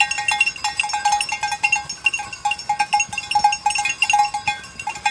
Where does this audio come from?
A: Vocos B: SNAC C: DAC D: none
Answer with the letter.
D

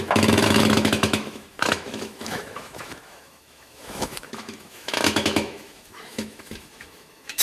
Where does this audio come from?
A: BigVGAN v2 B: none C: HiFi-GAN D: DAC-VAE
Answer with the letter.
D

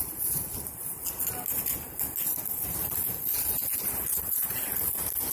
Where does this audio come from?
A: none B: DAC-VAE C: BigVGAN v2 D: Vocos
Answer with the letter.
A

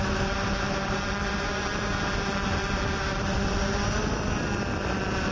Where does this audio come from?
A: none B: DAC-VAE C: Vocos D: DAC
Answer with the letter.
A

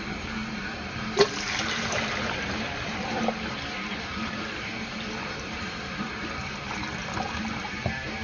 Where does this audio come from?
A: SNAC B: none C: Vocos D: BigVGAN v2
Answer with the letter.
D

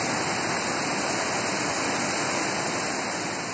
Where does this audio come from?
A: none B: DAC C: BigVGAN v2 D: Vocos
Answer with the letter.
A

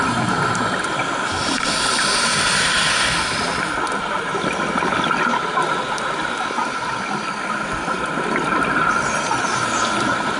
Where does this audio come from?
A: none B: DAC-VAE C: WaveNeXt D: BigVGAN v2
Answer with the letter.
A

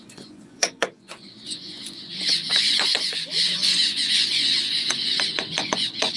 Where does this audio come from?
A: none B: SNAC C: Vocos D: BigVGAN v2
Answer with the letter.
C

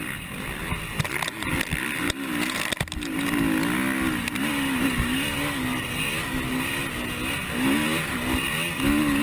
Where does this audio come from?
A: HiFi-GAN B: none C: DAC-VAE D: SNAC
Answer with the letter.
B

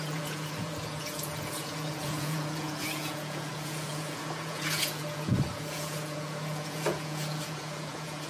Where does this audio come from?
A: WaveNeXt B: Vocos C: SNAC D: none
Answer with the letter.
B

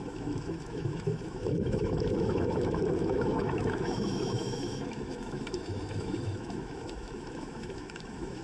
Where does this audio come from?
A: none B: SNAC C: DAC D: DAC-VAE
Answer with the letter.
D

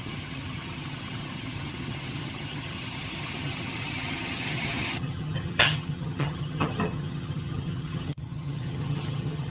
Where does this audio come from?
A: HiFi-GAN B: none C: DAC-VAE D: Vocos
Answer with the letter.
A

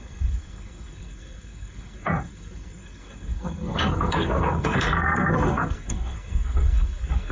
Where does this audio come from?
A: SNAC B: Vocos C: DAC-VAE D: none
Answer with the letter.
A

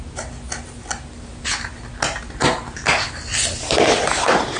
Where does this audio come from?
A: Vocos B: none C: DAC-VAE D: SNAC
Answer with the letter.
B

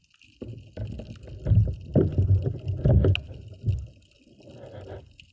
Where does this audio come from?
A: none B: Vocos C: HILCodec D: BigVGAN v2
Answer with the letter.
A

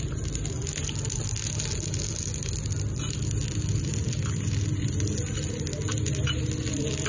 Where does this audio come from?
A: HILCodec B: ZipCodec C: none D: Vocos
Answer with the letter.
C